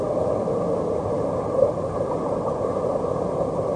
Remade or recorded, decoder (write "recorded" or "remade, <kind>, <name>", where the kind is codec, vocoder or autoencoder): recorded